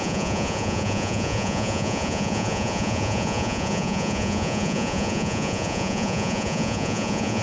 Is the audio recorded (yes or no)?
no